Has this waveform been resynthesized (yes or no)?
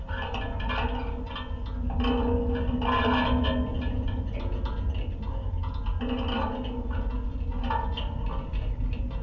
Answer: no